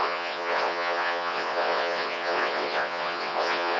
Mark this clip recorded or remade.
remade